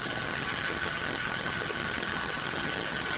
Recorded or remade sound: remade